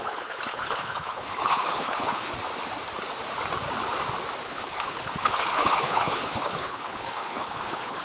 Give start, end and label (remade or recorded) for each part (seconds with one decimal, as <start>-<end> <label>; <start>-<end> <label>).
0.0-2.3 remade; 2.3-4.4 recorded; 4.4-8.0 remade